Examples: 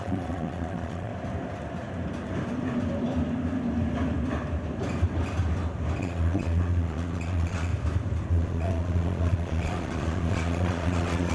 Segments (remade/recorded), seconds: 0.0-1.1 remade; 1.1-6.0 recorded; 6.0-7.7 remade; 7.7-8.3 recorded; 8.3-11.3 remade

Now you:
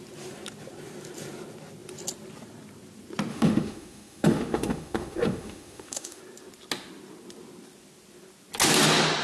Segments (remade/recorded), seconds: 0.0-3.3 recorded; 3.3-6.2 remade; 6.2-9.2 recorded